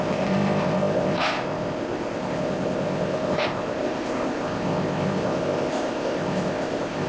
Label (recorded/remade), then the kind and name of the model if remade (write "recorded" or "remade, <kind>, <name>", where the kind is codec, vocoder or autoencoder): remade, codec, ZipCodec